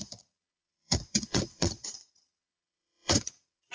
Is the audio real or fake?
fake